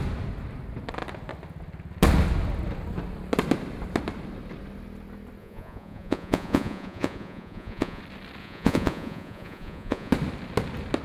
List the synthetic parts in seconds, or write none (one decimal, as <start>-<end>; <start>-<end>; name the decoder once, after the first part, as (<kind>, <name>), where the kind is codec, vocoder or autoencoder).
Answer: 5.4-8.0 (vocoder, Vocos); 8.4-10.1